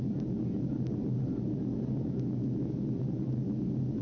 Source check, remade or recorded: recorded